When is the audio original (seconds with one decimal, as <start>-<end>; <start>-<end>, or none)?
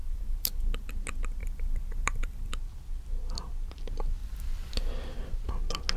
0.9-1.4; 2.5-4.2; 4.9-6.0